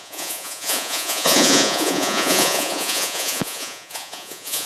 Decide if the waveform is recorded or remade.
remade